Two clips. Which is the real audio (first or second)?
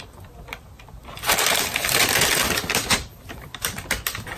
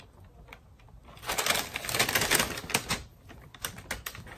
second